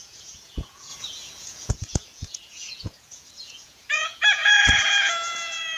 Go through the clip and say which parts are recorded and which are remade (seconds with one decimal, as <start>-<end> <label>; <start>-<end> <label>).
0.0-5.8 remade